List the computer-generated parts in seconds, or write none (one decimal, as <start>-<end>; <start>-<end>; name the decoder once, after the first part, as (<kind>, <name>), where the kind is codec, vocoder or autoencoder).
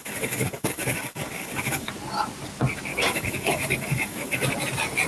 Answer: 0.0-1.9 (codec, DAC); 2.9-4.4